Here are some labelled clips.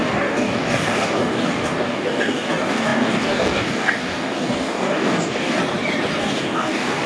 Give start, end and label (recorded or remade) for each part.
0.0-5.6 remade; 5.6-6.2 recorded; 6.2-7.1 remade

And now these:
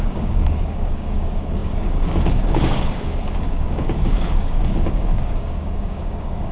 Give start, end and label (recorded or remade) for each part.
0.0-6.5 remade

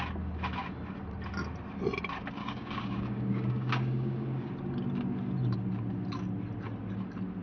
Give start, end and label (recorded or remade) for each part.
0.0-2.4 recorded; 2.4-4.5 remade; 4.5-7.4 recorded

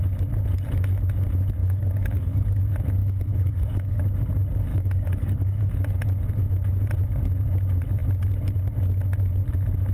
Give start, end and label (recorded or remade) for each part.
0.0-1.6 recorded; 1.6-2.6 remade; 2.6-3.0 recorded; 3.0-4.0 remade; 4.0-4.7 recorded; 4.7-5.7 remade; 5.7-9.9 recorded